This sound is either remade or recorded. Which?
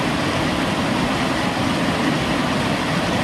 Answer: recorded